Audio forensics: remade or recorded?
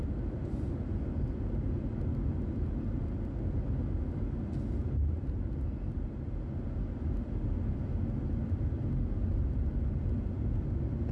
recorded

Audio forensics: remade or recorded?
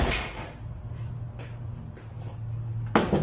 recorded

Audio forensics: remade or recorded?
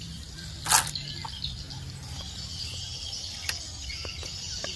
recorded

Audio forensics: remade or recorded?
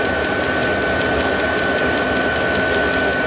recorded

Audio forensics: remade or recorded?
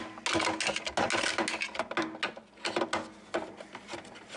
recorded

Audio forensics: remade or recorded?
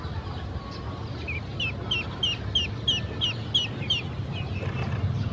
recorded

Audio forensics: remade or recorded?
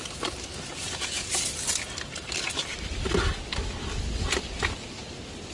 recorded